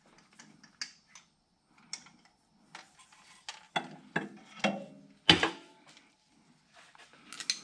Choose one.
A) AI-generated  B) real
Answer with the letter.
B